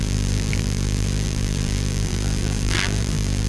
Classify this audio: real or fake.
fake